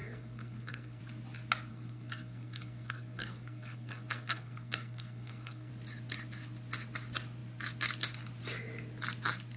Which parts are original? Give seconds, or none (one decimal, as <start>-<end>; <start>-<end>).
1.0-1.7; 5.7-9.6